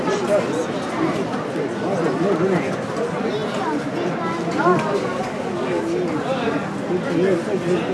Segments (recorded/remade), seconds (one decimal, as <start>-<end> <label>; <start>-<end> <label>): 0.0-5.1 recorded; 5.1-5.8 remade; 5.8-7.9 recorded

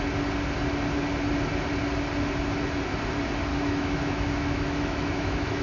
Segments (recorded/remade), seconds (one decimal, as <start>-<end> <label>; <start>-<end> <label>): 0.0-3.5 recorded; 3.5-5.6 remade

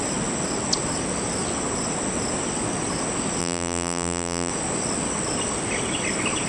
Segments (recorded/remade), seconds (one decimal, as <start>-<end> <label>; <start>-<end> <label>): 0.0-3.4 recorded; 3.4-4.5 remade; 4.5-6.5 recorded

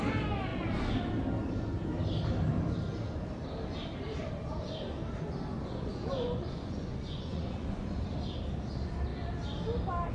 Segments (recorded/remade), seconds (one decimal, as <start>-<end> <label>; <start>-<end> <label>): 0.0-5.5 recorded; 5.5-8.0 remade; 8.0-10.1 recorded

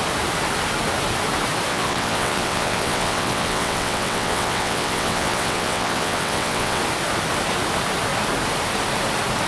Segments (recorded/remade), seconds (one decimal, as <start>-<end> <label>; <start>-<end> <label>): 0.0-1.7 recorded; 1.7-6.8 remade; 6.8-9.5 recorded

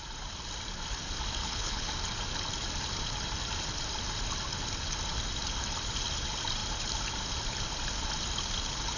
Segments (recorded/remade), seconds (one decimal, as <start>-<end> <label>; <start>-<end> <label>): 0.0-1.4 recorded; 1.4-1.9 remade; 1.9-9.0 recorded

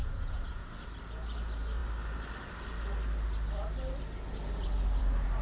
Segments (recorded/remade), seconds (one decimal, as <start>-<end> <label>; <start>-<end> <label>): 0.0-0.7 remade; 0.7-5.4 recorded

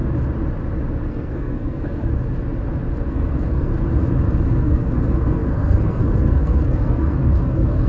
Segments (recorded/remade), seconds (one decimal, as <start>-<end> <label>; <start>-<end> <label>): 0.0-1.1 recorded; 1.1-2.1 remade; 2.1-3.1 recorded; 3.1-3.7 remade; 3.7-4.4 recorded; 4.4-7.9 remade